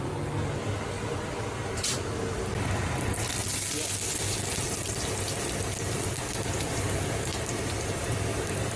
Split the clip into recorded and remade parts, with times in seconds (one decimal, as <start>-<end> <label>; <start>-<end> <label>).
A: 0.0-8.8 recorded